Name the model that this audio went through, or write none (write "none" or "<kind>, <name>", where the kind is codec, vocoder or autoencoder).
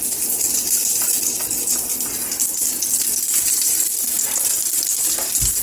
none